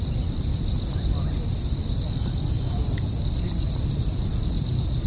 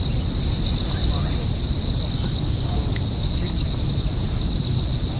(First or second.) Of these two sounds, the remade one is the first